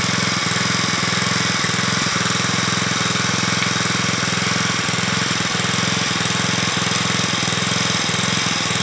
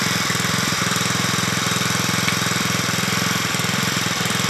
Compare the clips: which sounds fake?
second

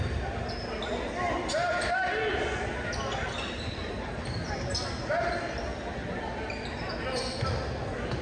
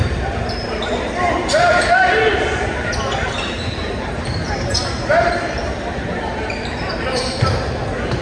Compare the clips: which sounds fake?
second